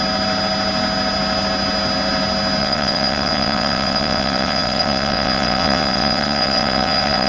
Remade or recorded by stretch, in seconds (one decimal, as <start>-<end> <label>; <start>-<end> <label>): 0.0-2.6 recorded; 2.6-7.3 remade